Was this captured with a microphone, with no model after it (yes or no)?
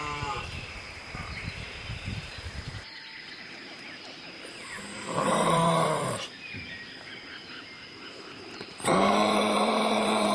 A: no